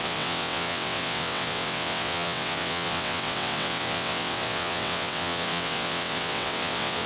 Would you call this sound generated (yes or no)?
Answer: yes